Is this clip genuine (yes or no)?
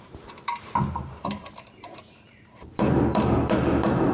no